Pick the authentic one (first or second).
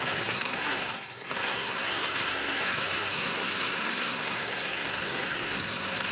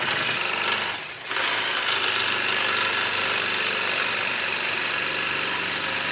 second